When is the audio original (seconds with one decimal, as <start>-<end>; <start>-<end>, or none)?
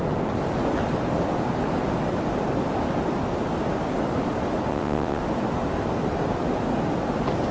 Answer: 0.0-4.7; 5.2-7.5